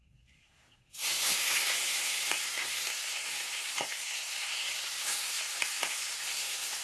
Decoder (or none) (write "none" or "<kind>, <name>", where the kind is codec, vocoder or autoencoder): codec, SNAC